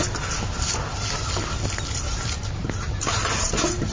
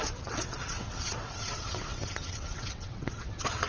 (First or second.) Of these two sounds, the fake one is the second